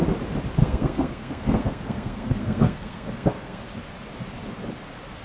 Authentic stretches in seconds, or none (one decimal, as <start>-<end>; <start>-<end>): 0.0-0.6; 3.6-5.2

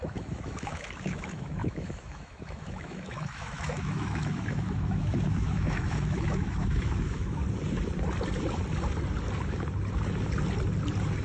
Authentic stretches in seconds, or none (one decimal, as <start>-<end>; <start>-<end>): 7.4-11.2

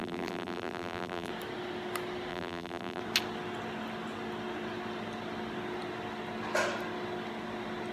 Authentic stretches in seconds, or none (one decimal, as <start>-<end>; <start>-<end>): 1.3-2.3; 3.0-7.9